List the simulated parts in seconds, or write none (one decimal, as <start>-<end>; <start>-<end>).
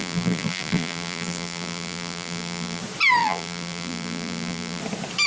0.0-2.8; 3.2-4.8